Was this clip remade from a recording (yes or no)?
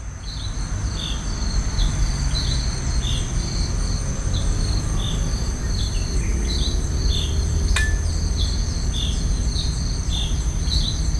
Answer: no